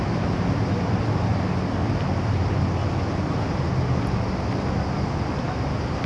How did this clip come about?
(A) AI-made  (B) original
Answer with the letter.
B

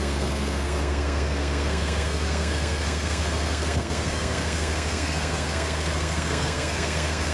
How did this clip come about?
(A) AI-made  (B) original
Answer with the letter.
A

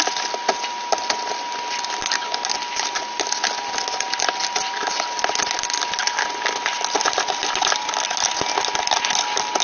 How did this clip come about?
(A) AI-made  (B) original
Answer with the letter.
B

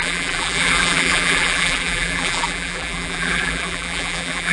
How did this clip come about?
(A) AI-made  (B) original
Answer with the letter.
A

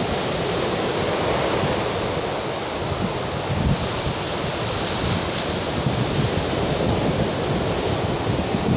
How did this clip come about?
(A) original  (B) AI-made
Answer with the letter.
A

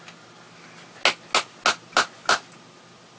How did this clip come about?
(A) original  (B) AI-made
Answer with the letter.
A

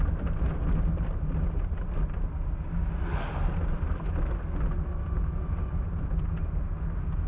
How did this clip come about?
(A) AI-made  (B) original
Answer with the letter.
B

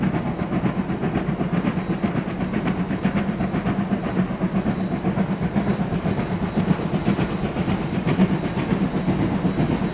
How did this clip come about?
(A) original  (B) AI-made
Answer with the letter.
A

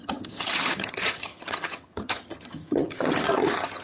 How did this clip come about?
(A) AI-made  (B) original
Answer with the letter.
A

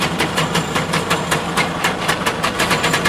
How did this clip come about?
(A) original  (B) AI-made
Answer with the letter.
B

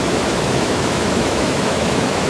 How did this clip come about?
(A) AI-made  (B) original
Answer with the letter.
A